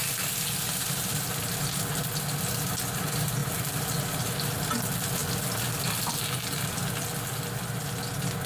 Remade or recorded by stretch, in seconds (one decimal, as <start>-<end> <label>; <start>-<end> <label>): 0.0-3.4 recorded; 3.4-4.0 remade; 4.0-8.5 recorded